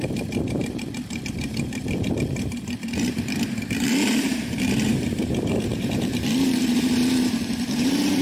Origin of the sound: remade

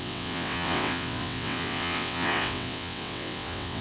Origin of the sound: remade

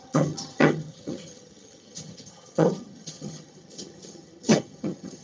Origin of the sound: remade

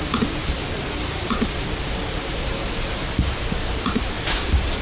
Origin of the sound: remade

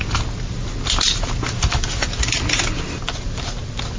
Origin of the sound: recorded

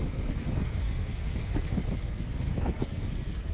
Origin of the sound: remade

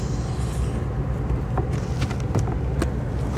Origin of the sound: recorded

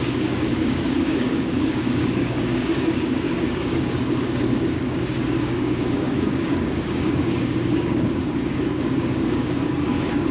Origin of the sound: remade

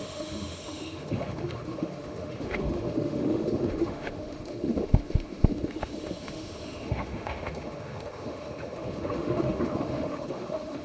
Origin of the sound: remade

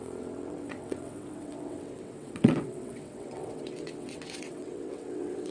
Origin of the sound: remade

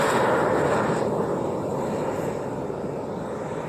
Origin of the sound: recorded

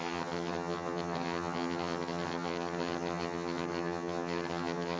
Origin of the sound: remade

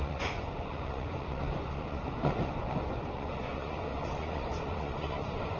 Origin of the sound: remade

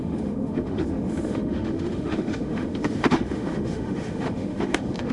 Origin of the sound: remade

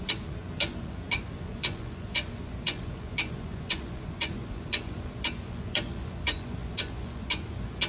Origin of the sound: remade